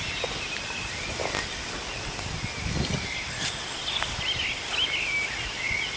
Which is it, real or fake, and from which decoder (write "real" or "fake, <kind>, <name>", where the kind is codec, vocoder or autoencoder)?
fake, vocoder, BigVGAN v2